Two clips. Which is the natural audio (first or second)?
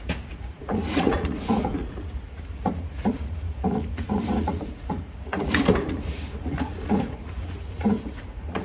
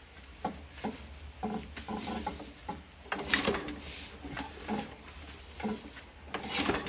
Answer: second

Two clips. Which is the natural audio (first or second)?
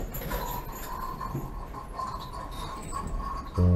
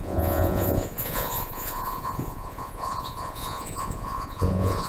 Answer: first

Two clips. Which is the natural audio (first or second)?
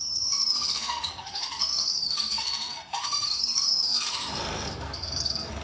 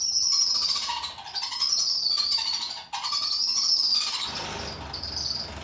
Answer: second